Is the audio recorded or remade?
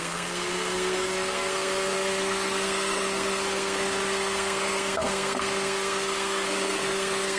remade